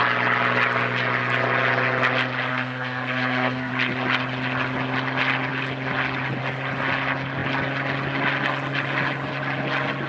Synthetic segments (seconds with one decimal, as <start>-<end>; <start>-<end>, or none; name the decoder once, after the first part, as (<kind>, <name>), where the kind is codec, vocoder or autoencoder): 2.5-3.7 (codec, SNAC)